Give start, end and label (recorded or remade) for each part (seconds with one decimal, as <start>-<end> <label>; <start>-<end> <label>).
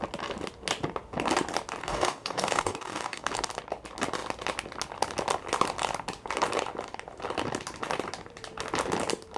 0.0-1.8 recorded; 1.8-3.3 remade; 3.3-9.4 recorded